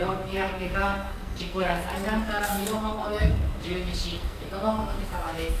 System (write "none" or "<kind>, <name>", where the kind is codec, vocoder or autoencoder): codec, SNAC